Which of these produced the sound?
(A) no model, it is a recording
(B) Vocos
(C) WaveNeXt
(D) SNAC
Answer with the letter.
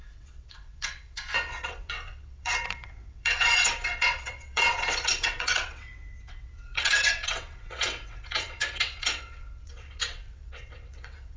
C